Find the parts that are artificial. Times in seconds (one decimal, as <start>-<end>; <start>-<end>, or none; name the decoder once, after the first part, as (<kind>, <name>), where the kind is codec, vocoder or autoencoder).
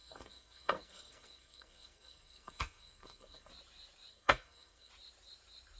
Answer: 0.0-3.5 (codec, SNAC); 4.1-4.9